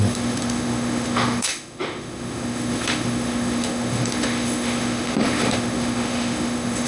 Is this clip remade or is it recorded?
remade